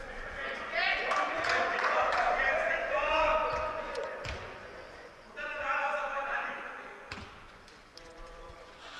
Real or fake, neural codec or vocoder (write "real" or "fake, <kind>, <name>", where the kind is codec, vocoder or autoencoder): fake, vocoder, Vocos